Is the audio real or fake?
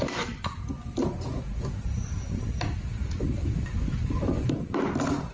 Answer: real